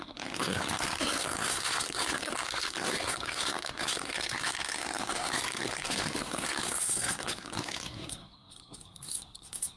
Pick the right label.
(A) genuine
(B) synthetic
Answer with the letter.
B